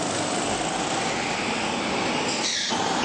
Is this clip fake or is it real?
real